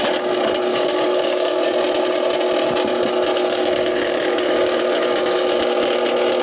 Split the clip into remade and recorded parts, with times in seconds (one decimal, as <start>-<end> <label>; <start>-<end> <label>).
0.0-0.7 recorded; 0.7-1.6 remade; 1.6-3.3 recorded; 3.3-5.5 remade; 5.5-6.4 recorded